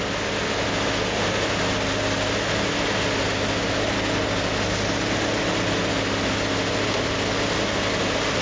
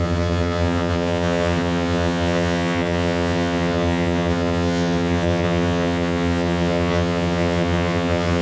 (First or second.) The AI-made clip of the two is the second